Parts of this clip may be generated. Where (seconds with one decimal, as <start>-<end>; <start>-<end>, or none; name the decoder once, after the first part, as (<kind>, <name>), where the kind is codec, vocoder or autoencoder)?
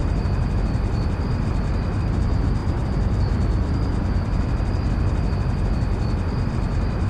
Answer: 0.0-7.1 (vocoder, BigVGAN v2)